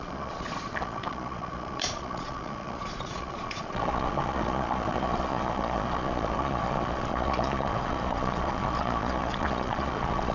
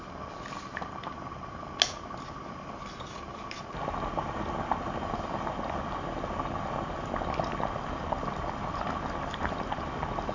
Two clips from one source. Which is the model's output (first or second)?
first